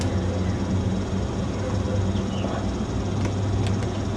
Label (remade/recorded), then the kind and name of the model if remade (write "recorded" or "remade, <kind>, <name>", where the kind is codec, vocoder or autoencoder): recorded